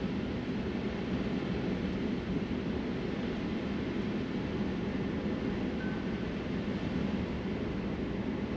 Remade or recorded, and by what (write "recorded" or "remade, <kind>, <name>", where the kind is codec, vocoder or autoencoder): recorded